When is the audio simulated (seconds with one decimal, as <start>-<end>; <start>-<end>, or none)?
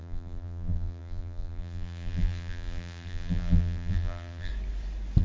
0.0-4.5